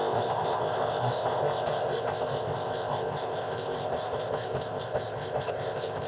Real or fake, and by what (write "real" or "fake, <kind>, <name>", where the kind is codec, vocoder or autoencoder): fake, codec, ZipCodec